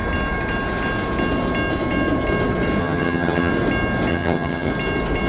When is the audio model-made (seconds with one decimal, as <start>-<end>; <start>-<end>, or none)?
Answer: 2.8-3.5; 4.1-4.7